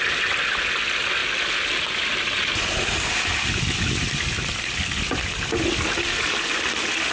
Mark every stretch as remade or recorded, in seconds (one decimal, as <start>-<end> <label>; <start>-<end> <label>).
0.0-7.1 recorded